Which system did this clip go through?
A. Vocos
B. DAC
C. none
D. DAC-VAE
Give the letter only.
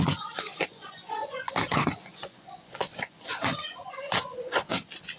A